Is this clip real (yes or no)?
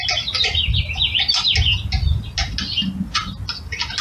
yes